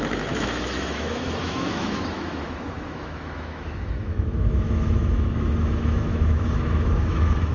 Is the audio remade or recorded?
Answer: remade